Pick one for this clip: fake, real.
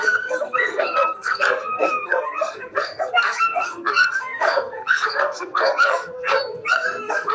fake